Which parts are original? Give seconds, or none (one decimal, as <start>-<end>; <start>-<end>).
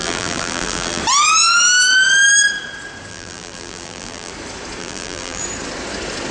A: 1.0-3.1; 4.3-4.8; 5.4-6.3